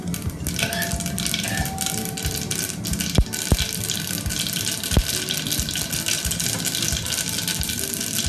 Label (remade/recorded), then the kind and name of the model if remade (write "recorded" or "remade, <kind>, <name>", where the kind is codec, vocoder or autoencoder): recorded